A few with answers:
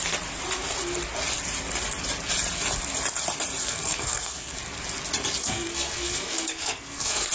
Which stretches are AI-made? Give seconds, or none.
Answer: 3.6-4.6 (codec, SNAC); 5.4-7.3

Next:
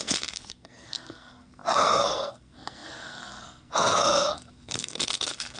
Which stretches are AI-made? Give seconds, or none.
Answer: 0.0-5.6 (codec, SNAC)

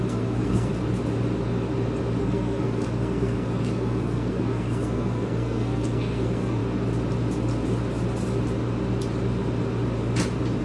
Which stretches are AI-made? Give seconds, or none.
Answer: 0.0-0.7 (codec, SNAC); 2.2-6.6

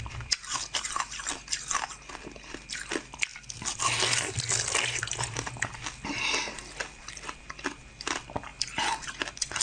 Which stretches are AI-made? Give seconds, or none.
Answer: none

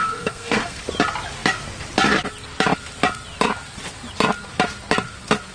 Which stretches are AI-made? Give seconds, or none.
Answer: 0.0-0.8 (codec, SNAC)

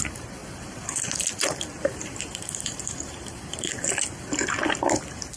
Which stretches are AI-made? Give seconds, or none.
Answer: 1.8-3.7 (vocoder, BigVGAN v2)

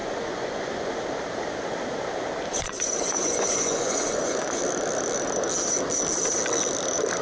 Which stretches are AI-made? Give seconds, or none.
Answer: 0.0-0.9 (vocoder, Vocos); 2.5-4.6

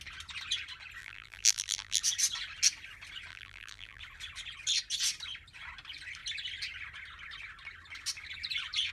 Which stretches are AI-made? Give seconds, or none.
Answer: 1.0-2.0 (vocoder, BigVGAN v2); 3.3-4.0